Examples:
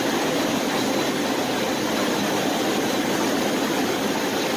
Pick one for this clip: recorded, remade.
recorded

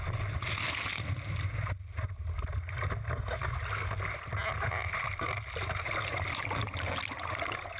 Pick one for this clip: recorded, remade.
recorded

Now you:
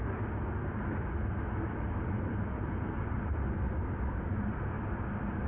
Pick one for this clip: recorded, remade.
recorded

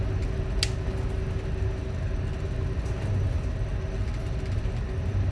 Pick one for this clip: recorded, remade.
recorded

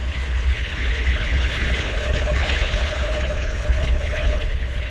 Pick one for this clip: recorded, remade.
remade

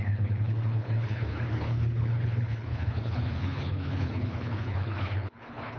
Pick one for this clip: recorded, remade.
remade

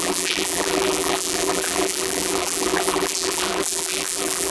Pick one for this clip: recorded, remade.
remade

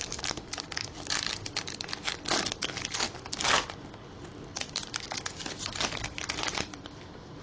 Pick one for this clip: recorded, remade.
recorded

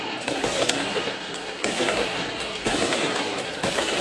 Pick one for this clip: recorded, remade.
remade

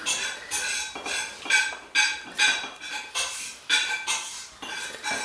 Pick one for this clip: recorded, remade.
recorded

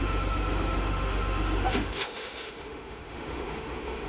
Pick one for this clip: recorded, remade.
remade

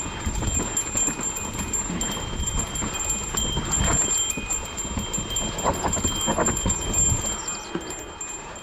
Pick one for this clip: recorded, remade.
recorded